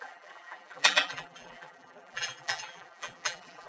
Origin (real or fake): fake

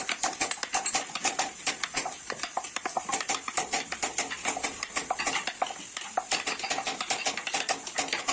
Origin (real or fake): real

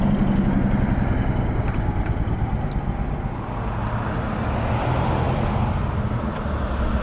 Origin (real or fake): real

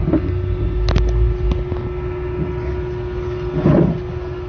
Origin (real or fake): real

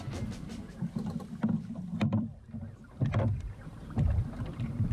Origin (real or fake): fake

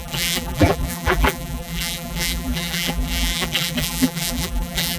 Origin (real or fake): fake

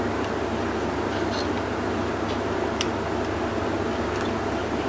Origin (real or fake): fake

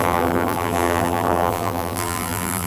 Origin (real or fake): fake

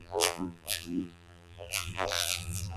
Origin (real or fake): fake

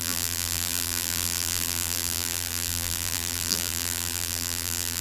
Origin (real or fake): fake